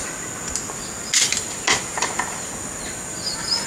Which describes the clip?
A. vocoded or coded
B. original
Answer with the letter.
B